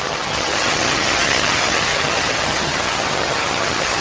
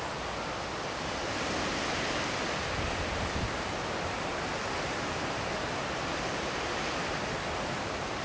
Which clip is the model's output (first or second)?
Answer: first